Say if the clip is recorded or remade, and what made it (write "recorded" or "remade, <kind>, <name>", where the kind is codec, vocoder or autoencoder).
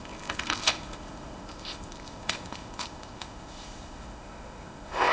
remade, codec, ZipCodec